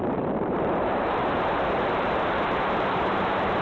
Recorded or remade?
remade